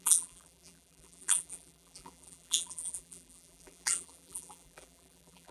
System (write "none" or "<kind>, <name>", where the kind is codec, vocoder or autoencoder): vocoder, BigVGAN v2